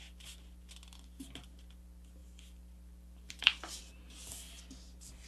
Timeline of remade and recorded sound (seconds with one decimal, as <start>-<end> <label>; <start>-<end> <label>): 0.0-2.2 recorded; 2.2-3.8 remade; 3.8-5.3 recorded